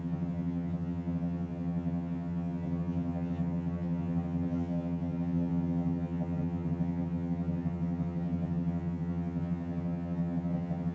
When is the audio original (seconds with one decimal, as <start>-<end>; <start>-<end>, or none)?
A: none